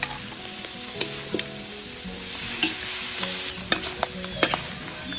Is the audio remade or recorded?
recorded